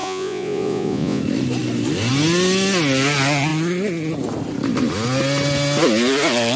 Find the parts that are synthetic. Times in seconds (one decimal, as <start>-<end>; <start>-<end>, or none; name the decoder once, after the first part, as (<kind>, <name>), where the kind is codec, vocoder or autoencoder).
0.0-1.2 (vocoder, Vocos)

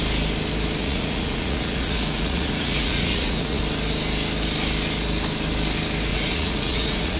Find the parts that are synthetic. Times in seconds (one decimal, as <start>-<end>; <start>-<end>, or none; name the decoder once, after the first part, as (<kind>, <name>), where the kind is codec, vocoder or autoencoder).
0.8-3.6 (vocoder, Vocos); 6.1-7.2

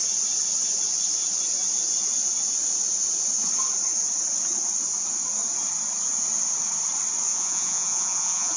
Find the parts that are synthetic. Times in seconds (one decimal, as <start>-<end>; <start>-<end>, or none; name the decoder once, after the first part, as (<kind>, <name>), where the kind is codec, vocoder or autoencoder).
7.3-8.6 (vocoder, Vocos)

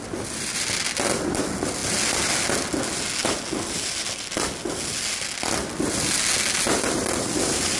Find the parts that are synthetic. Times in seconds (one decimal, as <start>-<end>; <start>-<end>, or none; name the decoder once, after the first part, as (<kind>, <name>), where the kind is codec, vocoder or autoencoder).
none

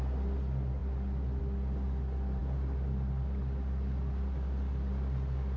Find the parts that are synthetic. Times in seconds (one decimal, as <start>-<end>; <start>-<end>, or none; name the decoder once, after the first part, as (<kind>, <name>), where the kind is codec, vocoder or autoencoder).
none